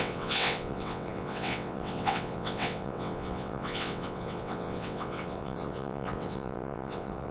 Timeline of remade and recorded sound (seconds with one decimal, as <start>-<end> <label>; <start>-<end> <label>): 0.0-7.3 remade